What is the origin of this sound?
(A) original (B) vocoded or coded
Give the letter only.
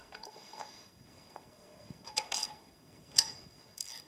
B